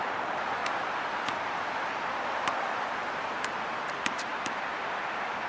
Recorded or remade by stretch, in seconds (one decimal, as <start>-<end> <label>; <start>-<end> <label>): 0.0-0.6 remade; 0.6-3.7 recorded; 3.7-4.3 remade; 4.3-5.1 recorded; 5.1-5.5 remade